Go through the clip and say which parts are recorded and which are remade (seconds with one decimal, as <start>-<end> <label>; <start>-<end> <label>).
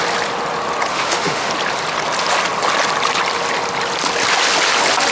0.0-0.9 recorded; 0.9-1.5 remade; 1.5-5.1 recorded